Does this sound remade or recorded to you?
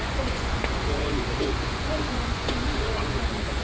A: remade